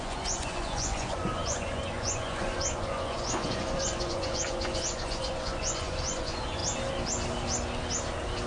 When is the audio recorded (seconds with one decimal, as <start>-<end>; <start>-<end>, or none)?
6.6-8.5